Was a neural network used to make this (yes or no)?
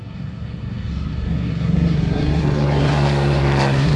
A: yes